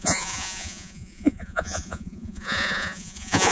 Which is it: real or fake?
fake